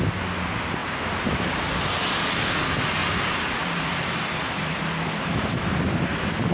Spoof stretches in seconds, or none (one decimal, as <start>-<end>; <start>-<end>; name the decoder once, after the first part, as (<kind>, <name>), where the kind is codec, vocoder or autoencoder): none